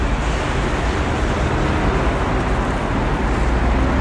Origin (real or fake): real